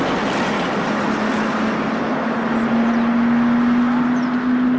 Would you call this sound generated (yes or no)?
no